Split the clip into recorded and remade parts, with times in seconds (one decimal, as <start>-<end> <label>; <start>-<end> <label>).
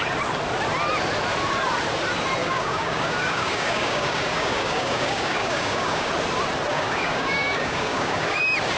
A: 0.0-2.4 recorded; 2.4-6.1 remade; 6.1-6.7 recorded; 6.7-8.4 remade; 8.4-8.8 recorded